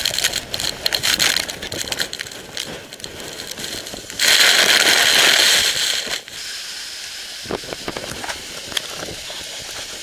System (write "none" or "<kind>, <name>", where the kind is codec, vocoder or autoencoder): none